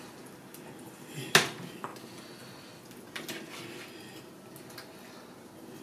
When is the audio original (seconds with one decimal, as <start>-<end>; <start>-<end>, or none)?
0.0-5.8